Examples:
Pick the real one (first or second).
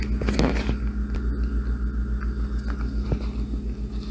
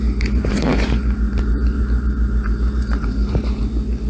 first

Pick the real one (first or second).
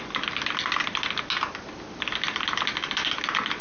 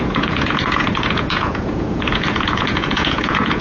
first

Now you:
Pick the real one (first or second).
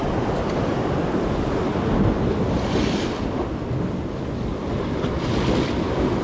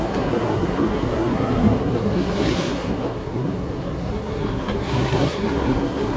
first